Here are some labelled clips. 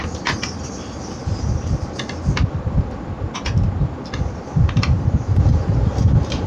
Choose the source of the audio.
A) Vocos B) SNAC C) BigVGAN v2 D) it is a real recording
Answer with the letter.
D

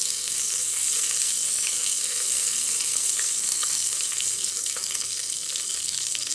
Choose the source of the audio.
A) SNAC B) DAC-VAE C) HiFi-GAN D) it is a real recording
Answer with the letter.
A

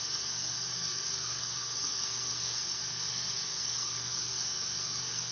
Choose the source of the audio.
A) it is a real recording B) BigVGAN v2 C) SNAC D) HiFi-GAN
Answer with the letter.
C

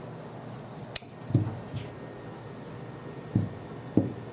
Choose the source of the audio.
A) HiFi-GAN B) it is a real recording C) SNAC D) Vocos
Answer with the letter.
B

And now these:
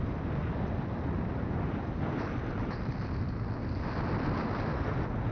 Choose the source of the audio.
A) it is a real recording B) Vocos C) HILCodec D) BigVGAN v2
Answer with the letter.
A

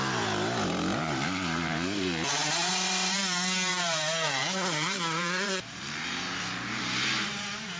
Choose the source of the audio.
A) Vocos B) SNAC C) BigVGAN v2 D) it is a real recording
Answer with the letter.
C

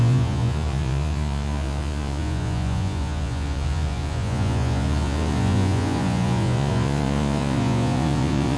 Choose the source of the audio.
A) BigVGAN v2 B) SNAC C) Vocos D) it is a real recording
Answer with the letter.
C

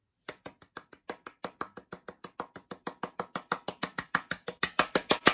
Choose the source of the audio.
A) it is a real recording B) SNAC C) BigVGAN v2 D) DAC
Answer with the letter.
A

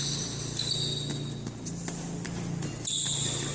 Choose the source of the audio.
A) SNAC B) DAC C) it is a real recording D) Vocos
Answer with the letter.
C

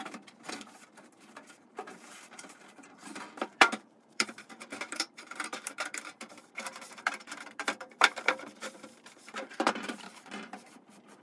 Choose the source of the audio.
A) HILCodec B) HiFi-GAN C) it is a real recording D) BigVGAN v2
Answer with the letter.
D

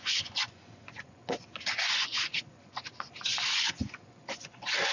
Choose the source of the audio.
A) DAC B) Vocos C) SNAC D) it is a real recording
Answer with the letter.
B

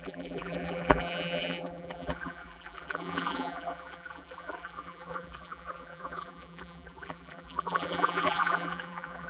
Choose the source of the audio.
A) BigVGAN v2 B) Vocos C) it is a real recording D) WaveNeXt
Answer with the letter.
A